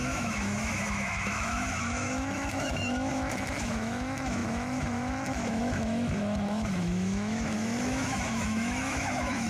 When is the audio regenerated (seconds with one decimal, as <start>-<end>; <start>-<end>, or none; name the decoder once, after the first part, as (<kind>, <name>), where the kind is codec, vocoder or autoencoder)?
0.0-9.5 (autoencoder, DAC-VAE)